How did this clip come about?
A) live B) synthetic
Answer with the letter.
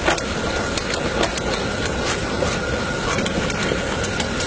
A